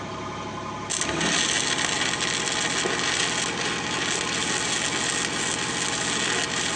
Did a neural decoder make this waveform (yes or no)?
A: no